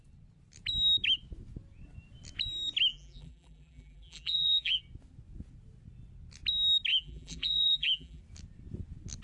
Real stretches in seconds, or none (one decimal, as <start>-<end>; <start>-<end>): 0.0-2.9; 4.8-6.9; 8.2-9.2